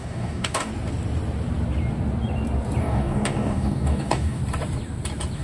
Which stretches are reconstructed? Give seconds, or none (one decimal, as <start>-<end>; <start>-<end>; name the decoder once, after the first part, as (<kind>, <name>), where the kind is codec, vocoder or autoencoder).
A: 0.0-0.7 (codec, DAC); 2.8-4.4